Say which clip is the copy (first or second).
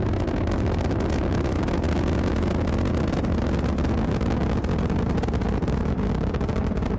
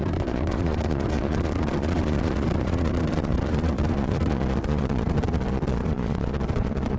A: second